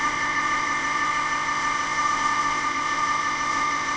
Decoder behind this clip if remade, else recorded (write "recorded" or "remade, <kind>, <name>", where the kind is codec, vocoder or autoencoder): remade, codec, ZipCodec